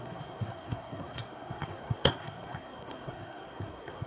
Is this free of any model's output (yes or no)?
no